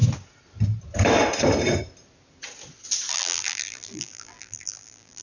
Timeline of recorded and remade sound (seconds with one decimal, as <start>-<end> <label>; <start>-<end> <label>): 0.0-3.1 recorded; 3.1-5.2 remade